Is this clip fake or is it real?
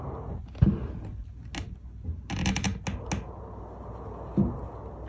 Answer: real